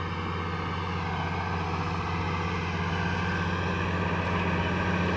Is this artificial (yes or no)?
no